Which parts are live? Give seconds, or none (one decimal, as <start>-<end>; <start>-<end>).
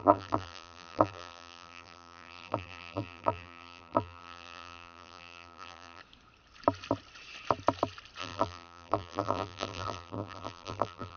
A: 6.0-8.2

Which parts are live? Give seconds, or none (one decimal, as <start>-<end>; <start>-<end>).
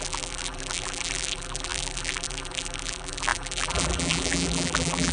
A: none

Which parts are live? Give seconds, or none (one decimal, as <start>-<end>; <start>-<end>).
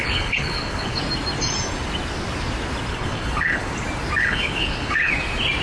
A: 1.0-2.9; 3.7-4.2; 5.1-5.6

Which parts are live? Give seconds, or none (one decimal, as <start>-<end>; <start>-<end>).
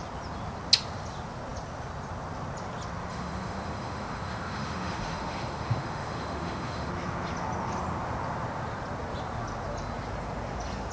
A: 0.0-3.1; 6.9-10.9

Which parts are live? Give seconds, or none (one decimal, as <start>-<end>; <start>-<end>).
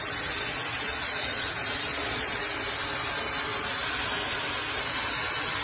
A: 0.0-0.7; 1.5-1.9; 2.4-5.6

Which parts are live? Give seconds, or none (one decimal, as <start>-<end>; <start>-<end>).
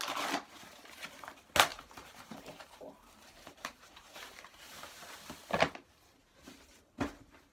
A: 0.0-1.7; 5.1-6.2